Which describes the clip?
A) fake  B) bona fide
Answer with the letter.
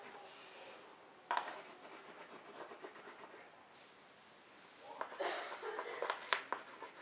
B